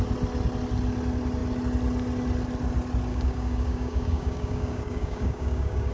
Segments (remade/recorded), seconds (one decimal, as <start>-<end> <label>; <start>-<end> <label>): 0.0-3.1 recorded; 3.1-5.9 remade